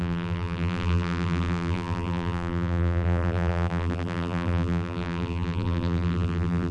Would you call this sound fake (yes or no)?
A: yes